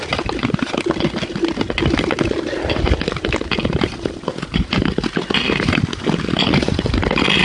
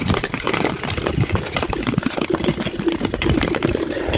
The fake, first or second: second